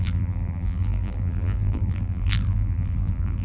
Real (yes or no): no